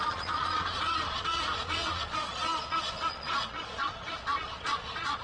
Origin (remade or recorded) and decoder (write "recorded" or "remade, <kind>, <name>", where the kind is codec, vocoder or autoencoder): remade, vocoder, Vocos